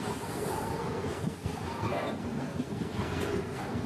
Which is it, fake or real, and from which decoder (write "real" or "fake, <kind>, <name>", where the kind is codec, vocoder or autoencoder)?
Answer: fake, codec, SNAC